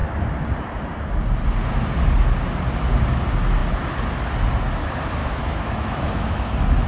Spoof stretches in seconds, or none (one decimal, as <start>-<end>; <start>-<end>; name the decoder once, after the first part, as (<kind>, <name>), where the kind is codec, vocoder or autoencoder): 5.2-6.4 (autoencoder, DAC-VAE)